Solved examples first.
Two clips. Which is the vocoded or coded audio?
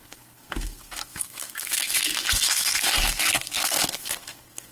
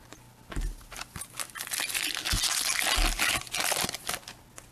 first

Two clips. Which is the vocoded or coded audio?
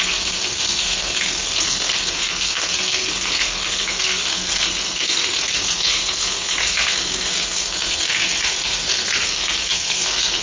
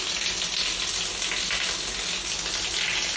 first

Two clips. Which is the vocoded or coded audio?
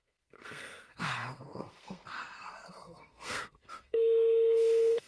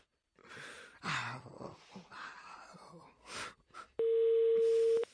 first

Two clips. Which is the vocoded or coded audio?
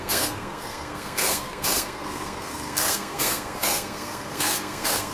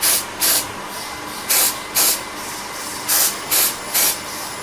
first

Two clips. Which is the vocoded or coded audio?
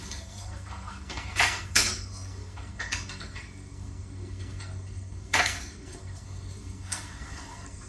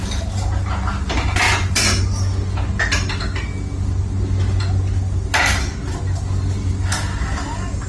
first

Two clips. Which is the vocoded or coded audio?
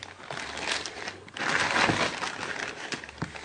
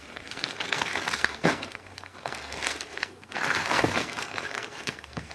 second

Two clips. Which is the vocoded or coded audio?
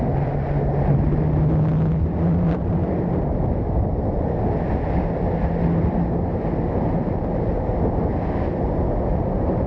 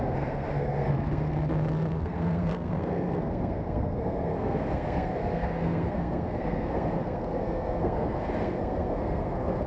second